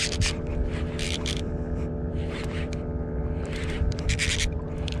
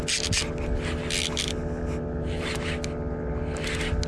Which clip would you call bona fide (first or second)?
second